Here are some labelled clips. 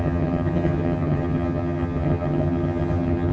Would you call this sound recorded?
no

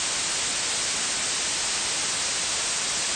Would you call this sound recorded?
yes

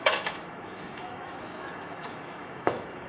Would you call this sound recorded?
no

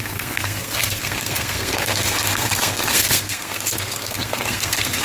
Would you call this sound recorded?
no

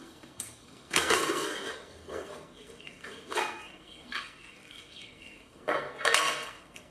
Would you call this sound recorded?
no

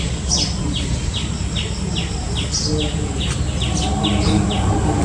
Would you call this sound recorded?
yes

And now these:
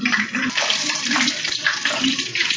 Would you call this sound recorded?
no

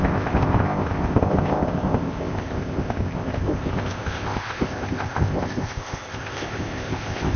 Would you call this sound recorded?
no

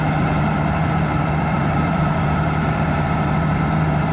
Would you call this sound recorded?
no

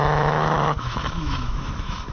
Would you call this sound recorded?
no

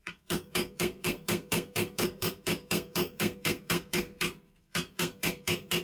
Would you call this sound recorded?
no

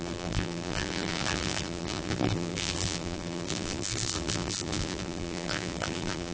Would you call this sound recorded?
no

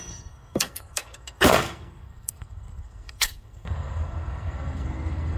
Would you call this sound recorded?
no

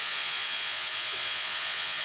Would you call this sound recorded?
no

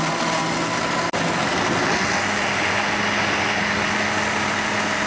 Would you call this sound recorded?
yes